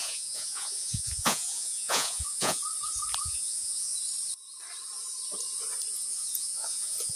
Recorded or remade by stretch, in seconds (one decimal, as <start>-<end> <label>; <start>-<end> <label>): 0.0-2.6 remade; 2.6-3.2 recorded; 3.2-3.9 remade; 3.9-5.9 recorded; 5.9-7.2 remade